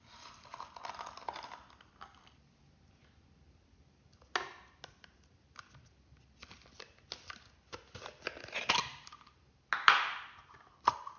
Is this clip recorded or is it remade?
recorded